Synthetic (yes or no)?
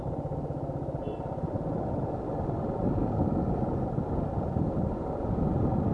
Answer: no